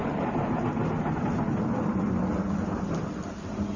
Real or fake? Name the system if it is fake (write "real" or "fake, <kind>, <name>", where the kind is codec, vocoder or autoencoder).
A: real